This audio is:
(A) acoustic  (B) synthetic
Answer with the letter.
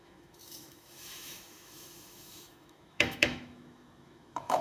B